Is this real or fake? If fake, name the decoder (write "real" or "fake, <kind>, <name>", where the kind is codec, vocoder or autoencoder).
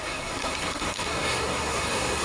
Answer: fake, codec, SNAC